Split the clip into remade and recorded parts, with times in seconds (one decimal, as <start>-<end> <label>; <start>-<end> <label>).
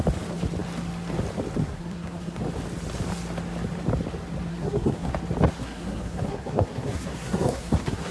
0.0-1.6 recorded; 1.6-2.4 remade; 2.4-4.5 recorded; 4.5-5.1 remade; 5.1-5.6 recorded; 5.6-8.1 remade